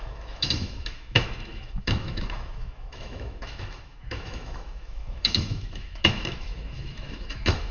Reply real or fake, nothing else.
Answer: fake